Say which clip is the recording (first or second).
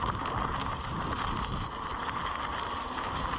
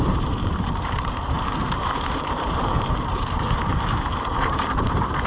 first